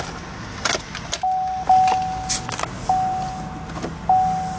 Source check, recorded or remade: recorded